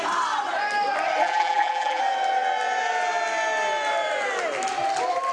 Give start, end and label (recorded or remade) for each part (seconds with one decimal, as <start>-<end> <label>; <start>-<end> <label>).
0.0-1.2 recorded; 1.2-2.0 remade; 2.0-5.3 recorded